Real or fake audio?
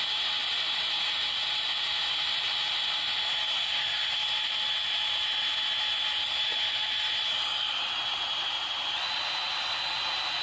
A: real